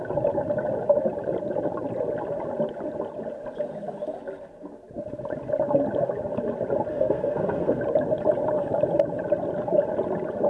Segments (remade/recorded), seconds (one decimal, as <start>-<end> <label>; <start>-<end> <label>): 0.0-6.9 recorded; 6.9-7.8 remade; 7.8-10.5 recorded